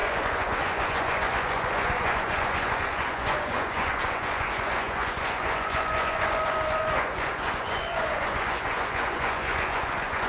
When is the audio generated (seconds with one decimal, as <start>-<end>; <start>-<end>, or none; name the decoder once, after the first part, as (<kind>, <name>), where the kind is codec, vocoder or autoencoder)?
0.0-10.3 (vocoder, Vocos)